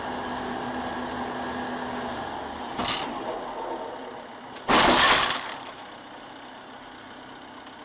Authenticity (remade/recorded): recorded